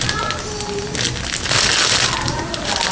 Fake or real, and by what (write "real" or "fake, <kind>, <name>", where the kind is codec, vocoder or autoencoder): real